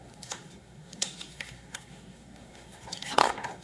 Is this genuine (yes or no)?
no